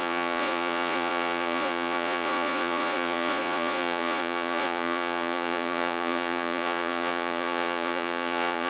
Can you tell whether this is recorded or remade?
remade